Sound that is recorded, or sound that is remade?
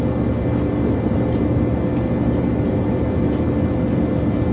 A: recorded